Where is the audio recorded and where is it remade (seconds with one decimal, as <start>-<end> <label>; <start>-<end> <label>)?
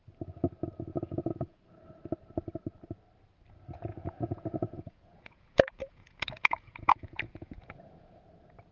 0.0-0.9 recorded; 0.9-1.6 remade; 1.6-3.9 recorded; 3.9-8.2 remade; 8.2-8.7 recorded